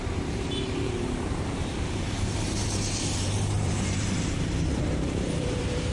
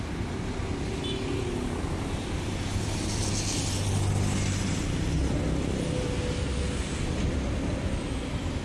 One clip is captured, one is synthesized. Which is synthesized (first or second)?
first